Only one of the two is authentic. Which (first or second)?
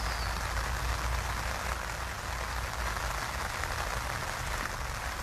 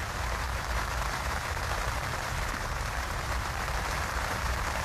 first